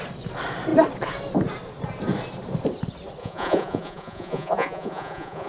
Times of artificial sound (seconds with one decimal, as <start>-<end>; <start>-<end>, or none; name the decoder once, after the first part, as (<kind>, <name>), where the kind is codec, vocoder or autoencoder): 3.2-5.5 (vocoder, Vocos)